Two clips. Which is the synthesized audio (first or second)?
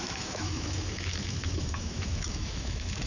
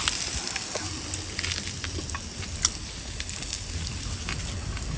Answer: first